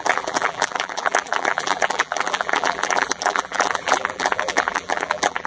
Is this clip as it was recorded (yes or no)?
no